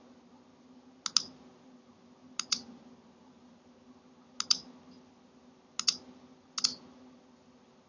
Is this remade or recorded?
recorded